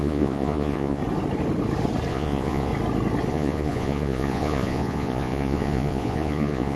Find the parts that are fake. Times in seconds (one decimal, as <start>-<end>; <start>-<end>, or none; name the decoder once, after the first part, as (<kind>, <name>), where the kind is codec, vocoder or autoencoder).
0.0-1.0 (vocoder, Vocos); 2.1-2.7; 3.3-6.8